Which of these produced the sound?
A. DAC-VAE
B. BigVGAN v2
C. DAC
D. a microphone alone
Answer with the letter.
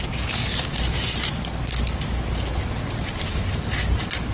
D